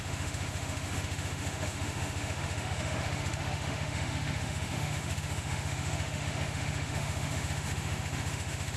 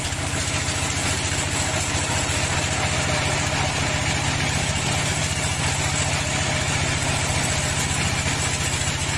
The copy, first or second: first